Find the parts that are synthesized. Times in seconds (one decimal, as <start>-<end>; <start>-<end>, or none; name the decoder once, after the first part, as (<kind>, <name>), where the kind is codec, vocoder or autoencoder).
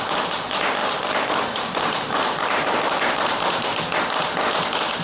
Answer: 0.8-3.8 (vocoder, BigVGAN v2)